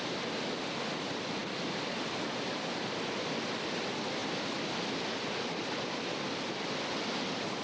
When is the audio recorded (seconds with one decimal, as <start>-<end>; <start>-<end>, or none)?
0.0-1.4; 3.1-7.6